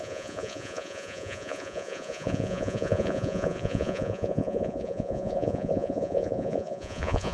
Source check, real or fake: fake